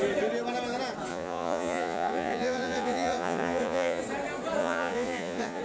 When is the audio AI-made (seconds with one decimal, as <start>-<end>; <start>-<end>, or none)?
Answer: 1.1-4.0; 4.6-5.6

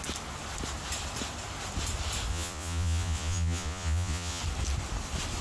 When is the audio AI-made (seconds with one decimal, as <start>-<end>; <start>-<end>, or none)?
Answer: 2.3-4.4

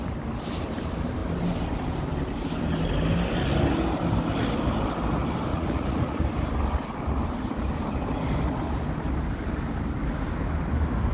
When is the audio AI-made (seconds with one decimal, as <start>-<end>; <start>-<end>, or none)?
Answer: 5.5-6.2

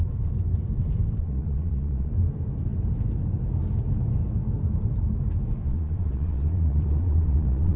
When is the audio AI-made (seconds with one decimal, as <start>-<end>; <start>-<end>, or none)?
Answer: 1.2-2.1; 5.7-7.8